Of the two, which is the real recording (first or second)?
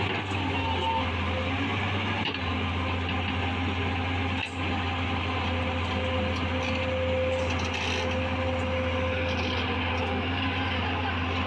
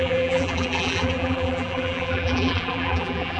first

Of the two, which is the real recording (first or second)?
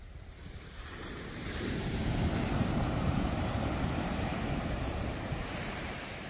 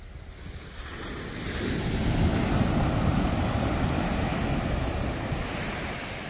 second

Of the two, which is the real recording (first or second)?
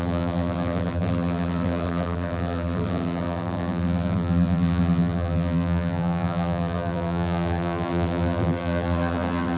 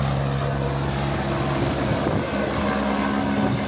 second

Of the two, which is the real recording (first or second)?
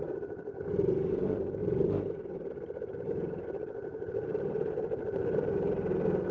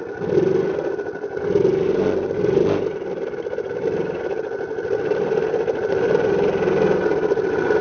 second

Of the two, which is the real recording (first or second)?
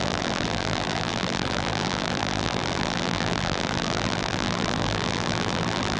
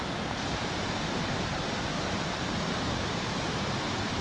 second